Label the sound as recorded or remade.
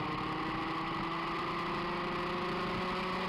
recorded